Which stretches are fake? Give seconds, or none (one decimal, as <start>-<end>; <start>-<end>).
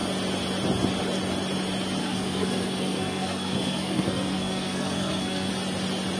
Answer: 2.0-5.5